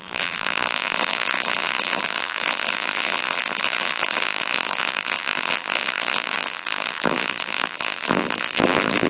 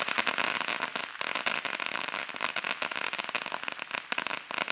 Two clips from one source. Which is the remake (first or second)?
first